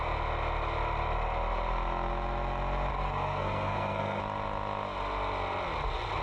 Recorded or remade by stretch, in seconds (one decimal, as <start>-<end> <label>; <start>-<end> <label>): 0.0-2.9 recorded; 2.9-4.2 remade; 4.2-6.2 recorded